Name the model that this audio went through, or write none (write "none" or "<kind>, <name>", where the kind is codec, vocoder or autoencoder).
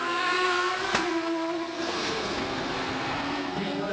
codec, SNAC